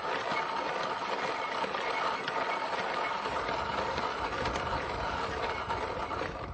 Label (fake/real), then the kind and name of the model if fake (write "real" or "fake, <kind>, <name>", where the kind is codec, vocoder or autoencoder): real